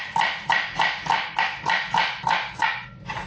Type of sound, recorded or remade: recorded